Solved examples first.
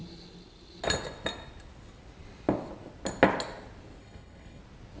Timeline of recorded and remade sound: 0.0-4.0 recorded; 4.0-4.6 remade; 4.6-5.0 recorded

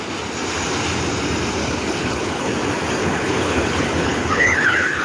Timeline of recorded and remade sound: 0.0-1.6 recorded; 1.6-2.5 remade; 2.5-3.0 recorded; 3.0-5.0 remade

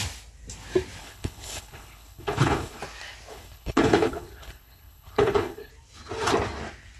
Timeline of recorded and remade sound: 0.0-1.0 recorded; 1.0-2.8 remade; 2.8-3.3 recorded; 3.3-5.7 remade; 5.7-7.0 recorded

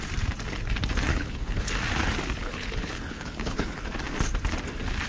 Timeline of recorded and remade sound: 0.0-1.1 recorded; 1.1-1.7 remade; 1.7-2.4 recorded; 2.4-3.9 remade; 3.9-5.1 recorded